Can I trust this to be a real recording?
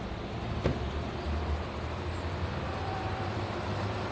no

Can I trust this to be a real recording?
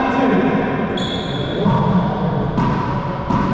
yes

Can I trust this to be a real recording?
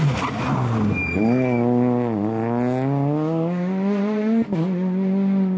yes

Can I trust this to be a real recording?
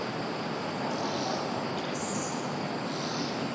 yes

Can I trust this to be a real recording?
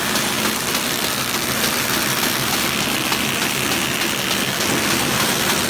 yes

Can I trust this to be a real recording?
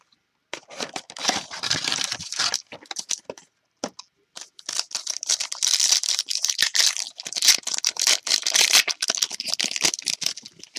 yes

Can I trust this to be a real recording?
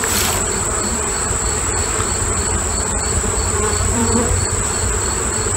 no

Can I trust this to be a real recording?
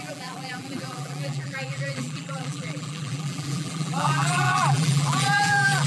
no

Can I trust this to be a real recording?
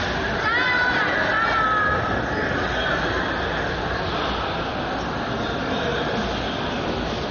yes